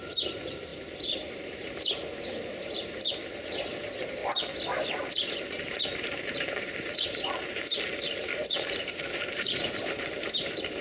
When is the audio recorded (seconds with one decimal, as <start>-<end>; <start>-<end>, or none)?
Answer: 4.2-5.1